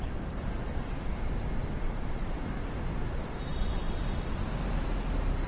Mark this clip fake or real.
real